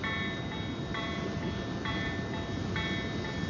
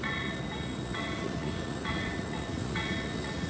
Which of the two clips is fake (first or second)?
second